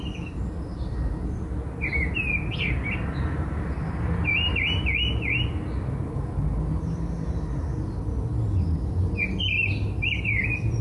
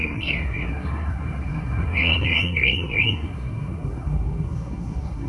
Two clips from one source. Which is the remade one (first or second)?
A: second